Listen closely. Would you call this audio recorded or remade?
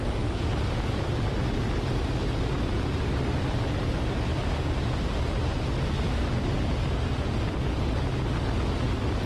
recorded